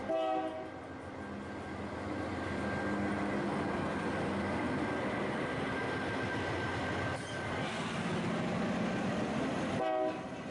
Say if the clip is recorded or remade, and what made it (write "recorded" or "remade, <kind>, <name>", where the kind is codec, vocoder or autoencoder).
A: recorded